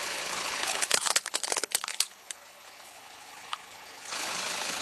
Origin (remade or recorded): remade